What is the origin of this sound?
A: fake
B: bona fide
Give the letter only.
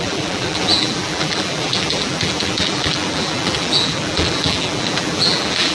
A